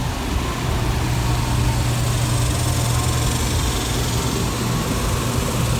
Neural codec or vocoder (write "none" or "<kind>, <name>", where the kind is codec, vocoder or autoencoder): none